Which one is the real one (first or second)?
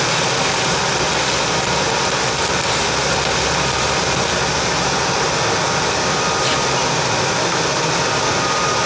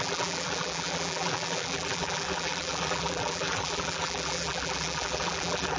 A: first